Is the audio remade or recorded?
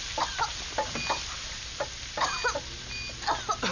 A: recorded